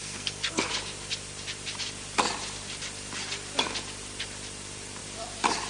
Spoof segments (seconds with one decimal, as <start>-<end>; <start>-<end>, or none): 0.0-0.7